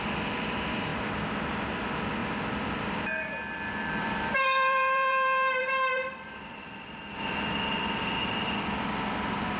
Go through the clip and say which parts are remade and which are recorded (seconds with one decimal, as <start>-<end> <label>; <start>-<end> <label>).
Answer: 0.0-2.2 recorded; 2.2-7.3 remade; 7.3-9.6 recorded